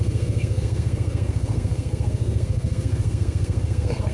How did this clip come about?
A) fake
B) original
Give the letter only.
A